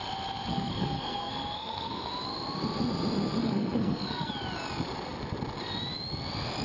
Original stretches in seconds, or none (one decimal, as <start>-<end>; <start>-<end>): 0.0-0.5; 2.1-3.4; 4.3-6.6